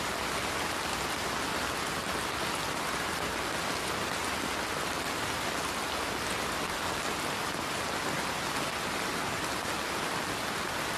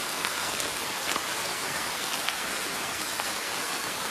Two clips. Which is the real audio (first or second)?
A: first